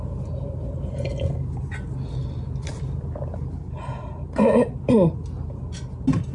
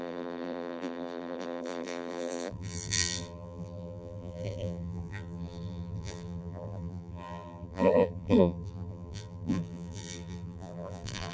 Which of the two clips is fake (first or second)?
second